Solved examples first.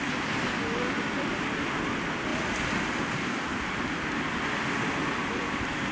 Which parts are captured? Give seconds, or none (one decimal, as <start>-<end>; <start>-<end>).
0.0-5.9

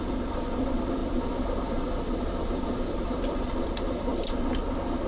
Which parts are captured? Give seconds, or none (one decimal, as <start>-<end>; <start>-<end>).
4.1-5.1

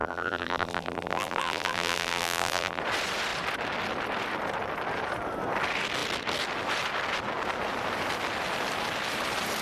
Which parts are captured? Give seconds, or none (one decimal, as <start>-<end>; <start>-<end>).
2.8-9.6

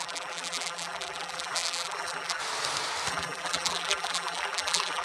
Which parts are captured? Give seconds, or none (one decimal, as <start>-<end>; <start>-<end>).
2.4-3.1

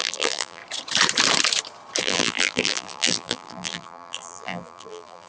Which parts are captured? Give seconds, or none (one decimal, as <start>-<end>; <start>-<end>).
0.6-2.0